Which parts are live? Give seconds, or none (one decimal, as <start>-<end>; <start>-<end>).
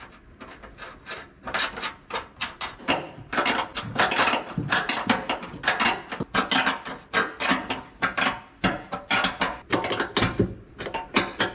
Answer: 0.0-11.5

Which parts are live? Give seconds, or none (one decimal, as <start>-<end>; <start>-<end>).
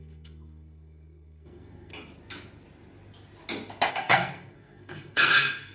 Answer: 1.9-3.9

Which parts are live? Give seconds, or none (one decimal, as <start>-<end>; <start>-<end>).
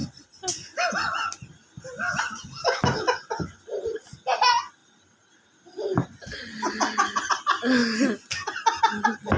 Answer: 0.0-9.4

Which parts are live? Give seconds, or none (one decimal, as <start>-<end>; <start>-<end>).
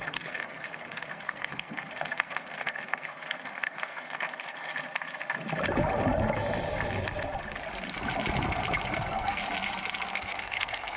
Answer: 4.7-8.9; 9.4-10.1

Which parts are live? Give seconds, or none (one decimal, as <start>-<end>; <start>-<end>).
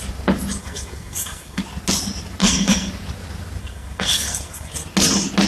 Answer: 0.0-0.6; 1.6-2.4; 2.9-3.6; 4.7-5.5